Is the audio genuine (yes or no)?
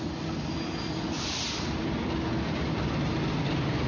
yes